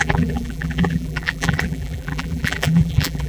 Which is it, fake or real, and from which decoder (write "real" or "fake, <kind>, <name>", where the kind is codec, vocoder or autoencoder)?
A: fake, vocoder, BigVGAN v2